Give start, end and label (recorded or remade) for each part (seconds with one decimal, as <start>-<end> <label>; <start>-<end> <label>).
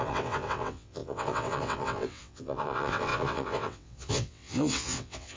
0.0-5.4 remade